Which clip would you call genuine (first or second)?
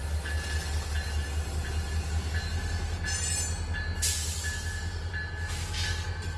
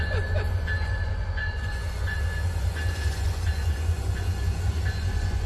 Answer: first